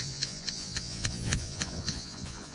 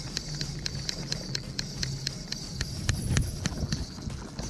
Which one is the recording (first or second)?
second